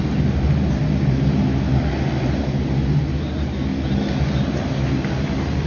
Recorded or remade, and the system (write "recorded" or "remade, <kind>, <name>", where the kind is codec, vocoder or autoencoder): recorded